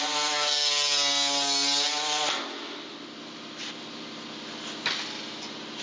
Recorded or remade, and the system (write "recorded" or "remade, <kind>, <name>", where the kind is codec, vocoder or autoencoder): recorded